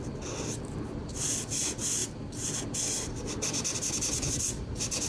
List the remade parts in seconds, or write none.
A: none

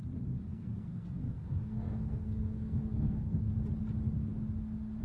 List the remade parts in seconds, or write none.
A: 0.5-3.5 (codec, SNAC)

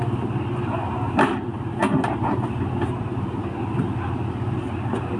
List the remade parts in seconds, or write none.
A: none

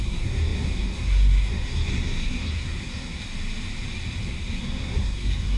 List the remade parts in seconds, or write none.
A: 0.0-3.2 (codec, SNAC); 4.2-5.6

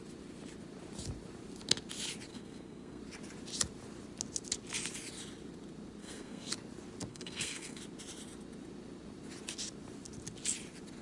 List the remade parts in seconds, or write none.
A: 2.3-3.0 (codec, SNAC); 6.0-6.5; 7.1-7.8

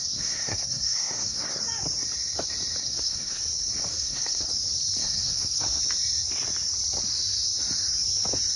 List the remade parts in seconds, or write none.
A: 0.0-1.6 (codec, SNAC); 2.8-3.4; 3.9-4.5; 5.0-5.8